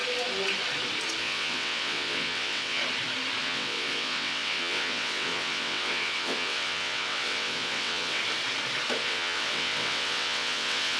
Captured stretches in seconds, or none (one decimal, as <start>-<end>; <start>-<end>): 0.0-1.2; 2.8-3.4; 8.2-9.0